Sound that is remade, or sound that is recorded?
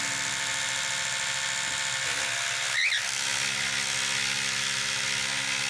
recorded